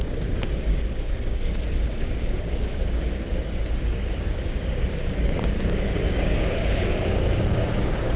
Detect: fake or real fake